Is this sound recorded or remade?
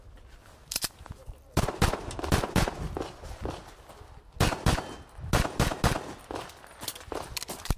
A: recorded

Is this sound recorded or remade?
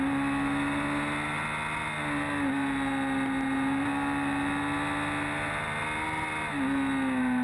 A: recorded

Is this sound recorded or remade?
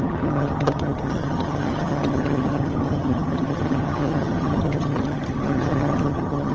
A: remade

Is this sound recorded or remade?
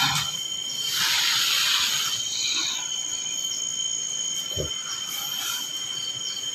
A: recorded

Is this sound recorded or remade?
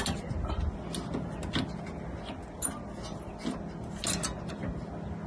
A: recorded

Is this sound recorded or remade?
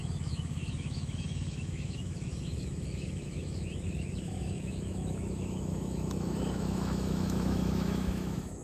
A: remade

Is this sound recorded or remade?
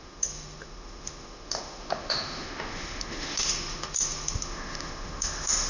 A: remade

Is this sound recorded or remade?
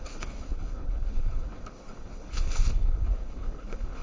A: remade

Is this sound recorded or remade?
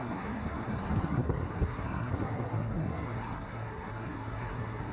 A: remade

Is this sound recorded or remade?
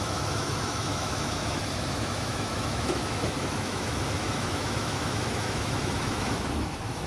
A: remade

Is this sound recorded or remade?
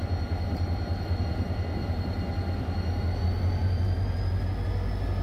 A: recorded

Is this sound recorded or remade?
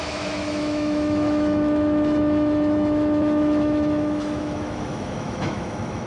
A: remade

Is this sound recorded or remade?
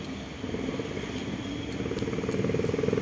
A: recorded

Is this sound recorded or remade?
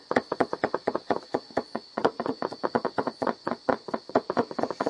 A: remade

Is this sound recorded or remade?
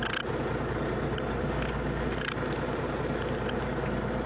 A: recorded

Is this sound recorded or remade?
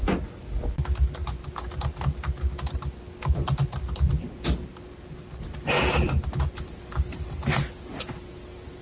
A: recorded